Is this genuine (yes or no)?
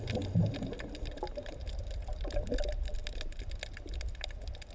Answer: yes